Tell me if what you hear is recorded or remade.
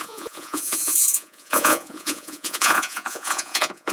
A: remade